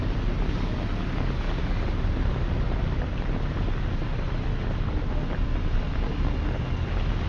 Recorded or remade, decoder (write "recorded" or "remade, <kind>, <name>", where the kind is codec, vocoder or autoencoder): recorded